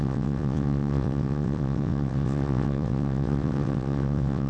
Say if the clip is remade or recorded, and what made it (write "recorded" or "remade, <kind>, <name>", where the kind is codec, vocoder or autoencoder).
remade, vocoder, WaveNeXt